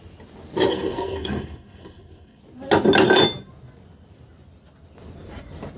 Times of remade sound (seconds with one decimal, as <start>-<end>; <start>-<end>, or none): 0.7-2.4